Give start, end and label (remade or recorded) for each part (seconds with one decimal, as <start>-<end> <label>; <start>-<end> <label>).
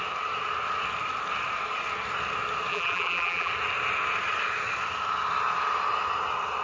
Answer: 0.0-2.7 recorded; 2.7-3.5 remade; 3.5-6.6 recorded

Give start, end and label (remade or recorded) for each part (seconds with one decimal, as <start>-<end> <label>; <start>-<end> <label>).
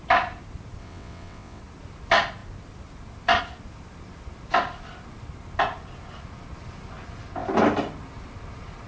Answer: 0.0-0.8 recorded; 0.8-1.6 remade; 1.6-8.9 recorded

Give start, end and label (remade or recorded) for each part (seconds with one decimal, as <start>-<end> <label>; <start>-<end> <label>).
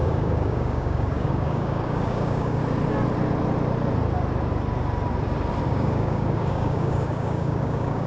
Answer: 0.0-2.6 remade; 2.6-5.7 recorded; 5.7-8.1 remade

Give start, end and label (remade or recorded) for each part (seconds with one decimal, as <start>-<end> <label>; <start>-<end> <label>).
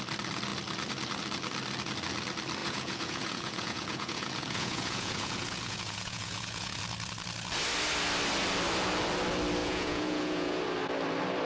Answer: 0.0-2.6 recorded; 2.6-6.8 remade; 6.8-9.6 recorded; 9.6-10.6 remade; 10.6-11.5 recorded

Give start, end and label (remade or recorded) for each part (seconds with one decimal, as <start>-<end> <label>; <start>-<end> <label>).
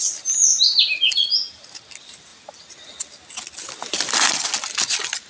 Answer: 0.0-5.3 recorded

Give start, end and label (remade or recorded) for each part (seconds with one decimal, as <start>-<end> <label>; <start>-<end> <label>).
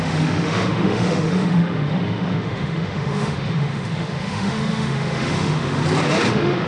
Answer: 0.0-5.8 remade; 5.8-6.3 recorded; 6.3-6.7 remade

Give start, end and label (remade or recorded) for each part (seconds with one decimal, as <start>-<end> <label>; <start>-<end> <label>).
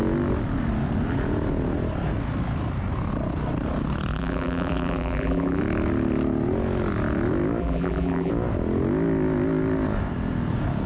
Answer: 0.0-4.1 recorded; 4.1-5.6 remade; 5.6-7.6 recorded; 7.6-8.3 remade; 8.3-10.9 recorded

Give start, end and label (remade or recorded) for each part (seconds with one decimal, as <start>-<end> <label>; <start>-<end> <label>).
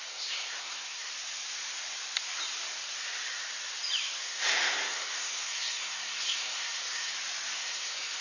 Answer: 0.0-1.1 remade; 1.1-4.2 recorded; 4.2-7.1 remade; 7.1-7.6 recorded; 7.6-8.2 remade